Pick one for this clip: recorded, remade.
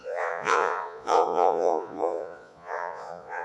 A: remade